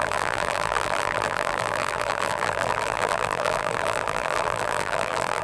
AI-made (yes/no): yes